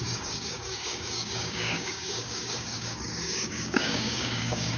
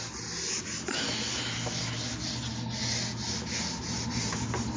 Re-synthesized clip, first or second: first